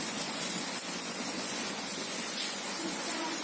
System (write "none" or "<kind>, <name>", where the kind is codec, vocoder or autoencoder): vocoder, Vocos